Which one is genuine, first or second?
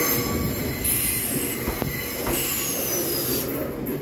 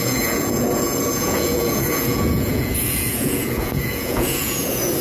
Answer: first